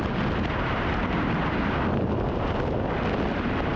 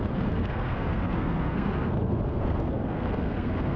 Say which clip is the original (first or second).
first